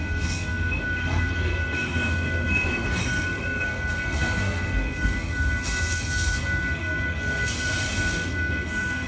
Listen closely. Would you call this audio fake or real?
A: fake